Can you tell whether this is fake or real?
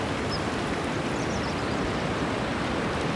real